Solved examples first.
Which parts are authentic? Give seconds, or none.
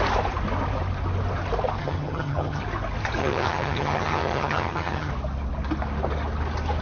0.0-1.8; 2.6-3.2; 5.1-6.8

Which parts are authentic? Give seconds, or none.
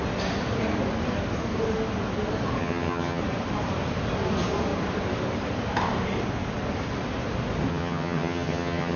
0.0-2.6; 3.2-7.7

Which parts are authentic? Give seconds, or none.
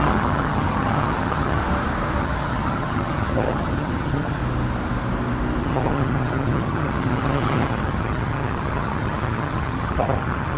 1.6-2.2; 4.4-5.6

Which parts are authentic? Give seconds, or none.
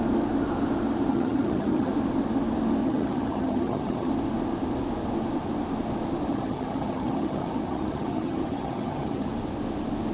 0.0-1.1; 1.9-2.8; 4.1-6.3; 9.3-10.1